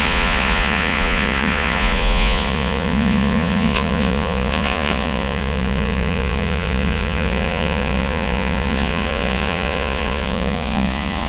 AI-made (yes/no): yes